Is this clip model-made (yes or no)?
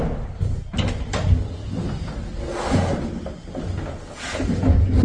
no